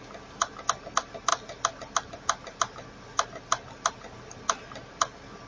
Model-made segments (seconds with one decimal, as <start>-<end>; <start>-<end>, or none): none